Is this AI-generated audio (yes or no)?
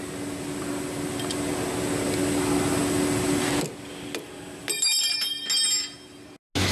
no